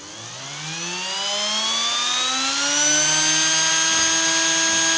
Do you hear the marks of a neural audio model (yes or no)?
no